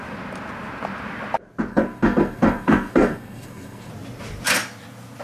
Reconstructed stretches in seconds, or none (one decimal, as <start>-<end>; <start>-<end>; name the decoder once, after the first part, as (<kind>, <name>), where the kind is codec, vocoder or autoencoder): 1.7-3.9 (codec, SNAC)